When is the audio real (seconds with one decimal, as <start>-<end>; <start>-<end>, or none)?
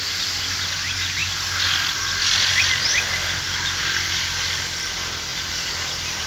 0.0-6.3